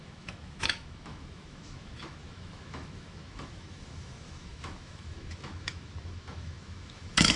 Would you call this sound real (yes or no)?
no